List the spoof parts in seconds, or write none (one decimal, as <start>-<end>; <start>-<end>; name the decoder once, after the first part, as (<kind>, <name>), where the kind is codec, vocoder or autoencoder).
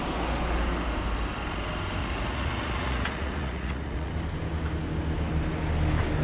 2.0-4.1 (vocoder, Vocos)